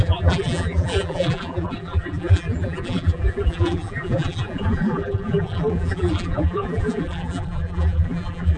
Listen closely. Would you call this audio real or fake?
fake